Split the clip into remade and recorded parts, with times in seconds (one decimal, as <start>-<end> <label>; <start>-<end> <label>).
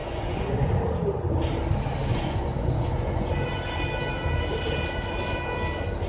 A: 0.0-0.7 remade; 0.7-2.1 recorded; 2.1-3.3 remade; 3.3-6.1 recorded